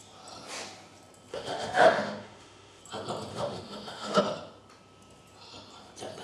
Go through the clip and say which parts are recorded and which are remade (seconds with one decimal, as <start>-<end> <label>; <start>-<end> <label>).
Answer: 0.0-1.3 recorded; 1.3-2.8 remade; 2.8-3.3 recorded; 3.3-4.2 remade; 4.2-6.2 recorded